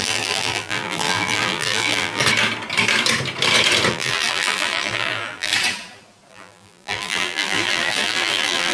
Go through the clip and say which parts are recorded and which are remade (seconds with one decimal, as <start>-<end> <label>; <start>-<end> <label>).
0.0-2.2 remade; 2.2-3.9 recorded; 3.9-5.5 remade; 5.5-6.3 recorded; 6.3-8.7 remade

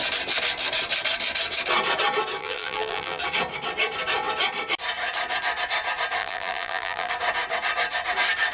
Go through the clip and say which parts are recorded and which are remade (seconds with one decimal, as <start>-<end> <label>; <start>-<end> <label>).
0.0-2.4 recorded; 2.4-3.2 remade; 3.2-6.2 recorded; 6.2-7.1 remade; 7.1-8.5 recorded

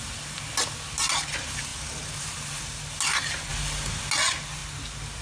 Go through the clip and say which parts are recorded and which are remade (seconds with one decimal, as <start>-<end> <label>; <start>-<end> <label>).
0.0-5.2 recorded

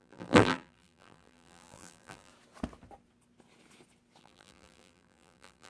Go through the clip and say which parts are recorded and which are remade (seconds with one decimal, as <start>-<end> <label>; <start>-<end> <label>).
0.0-2.3 remade; 2.3-4.2 recorded; 4.2-5.7 remade

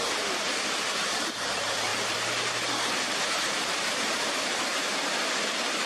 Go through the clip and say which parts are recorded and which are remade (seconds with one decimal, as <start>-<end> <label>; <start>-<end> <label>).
0.0-5.9 remade

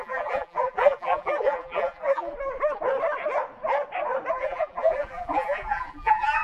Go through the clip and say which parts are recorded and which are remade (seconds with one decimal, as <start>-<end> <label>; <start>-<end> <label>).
0.0-2.3 remade; 2.3-4.3 recorded; 4.3-6.4 remade

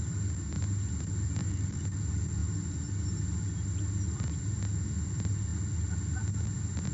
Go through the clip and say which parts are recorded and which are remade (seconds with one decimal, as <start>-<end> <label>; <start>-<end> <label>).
0.0-1.4 recorded; 1.4-2.0 remade; 2.0-6.9 recorded

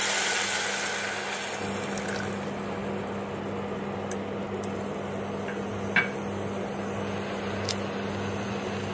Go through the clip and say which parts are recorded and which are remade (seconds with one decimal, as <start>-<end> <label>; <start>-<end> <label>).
0.0-2.8 recorded; 2.8-4.9 remade; 4.9-8.9 recorded